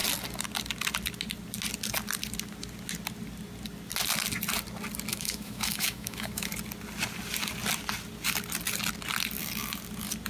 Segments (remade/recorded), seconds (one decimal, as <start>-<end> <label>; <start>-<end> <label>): 0.0-5.1 recorded; 5.1-6.5 remade; 6.5-10.3 recorded